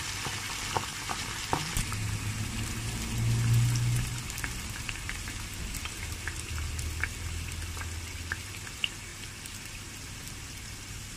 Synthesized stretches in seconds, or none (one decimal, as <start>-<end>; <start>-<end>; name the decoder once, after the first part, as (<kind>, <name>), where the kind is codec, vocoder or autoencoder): 0.9-5.4 (vocoder, BigVGAN v2); 9.1-10.3